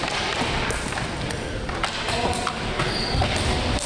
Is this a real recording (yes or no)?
yes